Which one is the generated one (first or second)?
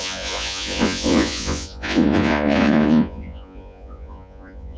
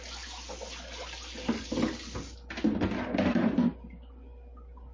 first